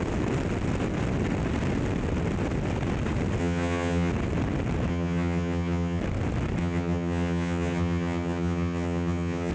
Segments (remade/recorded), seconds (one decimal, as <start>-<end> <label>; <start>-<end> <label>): 0.0-3.4 recorded; 3.4-4.1 remade; 4.1-4.9 recorded; 4.9-6.0 remade; 6.0-6.6 recorded; 6.6-9.5 remade